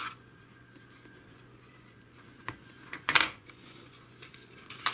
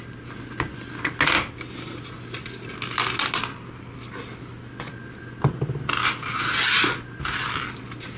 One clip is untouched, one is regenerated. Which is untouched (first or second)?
second